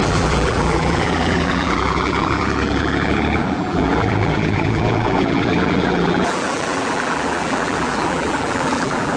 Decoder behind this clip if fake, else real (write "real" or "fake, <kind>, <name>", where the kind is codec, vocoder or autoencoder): fake, vocoder, BigVGAN v2